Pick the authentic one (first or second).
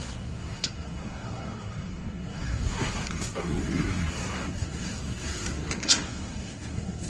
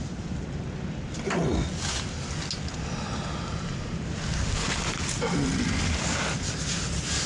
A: second